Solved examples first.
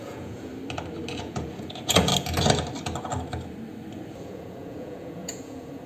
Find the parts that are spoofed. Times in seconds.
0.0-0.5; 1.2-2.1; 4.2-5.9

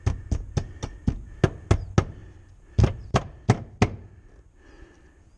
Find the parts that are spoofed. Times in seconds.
none